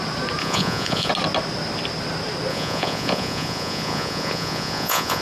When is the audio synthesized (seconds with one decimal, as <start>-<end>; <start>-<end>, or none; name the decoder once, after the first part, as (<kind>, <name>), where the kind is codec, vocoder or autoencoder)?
0.4-1.1 (vocoder, Vocos); 2.5-5.2